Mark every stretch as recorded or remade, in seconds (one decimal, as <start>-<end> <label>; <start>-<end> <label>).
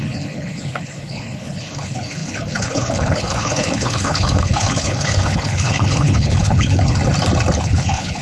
0.0-7.0 remade; 7.0-7.6 recorded; 7.6-8.2 remade